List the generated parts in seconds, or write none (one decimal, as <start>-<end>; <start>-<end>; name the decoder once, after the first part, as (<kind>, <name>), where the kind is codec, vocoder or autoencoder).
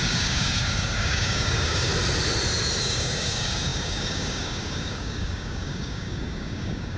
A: 0.0-1.9 (codec, DAC); 2.8-7.0